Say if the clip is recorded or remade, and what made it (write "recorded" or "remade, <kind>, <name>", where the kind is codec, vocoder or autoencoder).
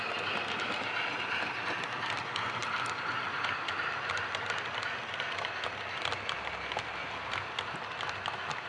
recorded